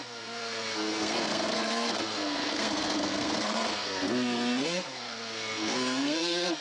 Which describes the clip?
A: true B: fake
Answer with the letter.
B